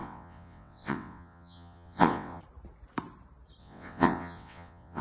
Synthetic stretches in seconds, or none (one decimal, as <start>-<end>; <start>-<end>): 0.0-2.4; 3.6-5.0